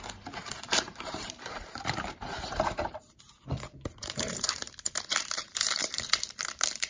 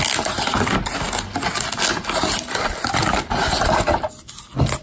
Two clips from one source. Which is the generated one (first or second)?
first